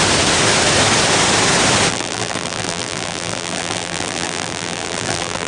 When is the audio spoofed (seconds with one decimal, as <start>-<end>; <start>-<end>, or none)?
1.9-5.5